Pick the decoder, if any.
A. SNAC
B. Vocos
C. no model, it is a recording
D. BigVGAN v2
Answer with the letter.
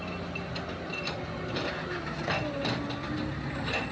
C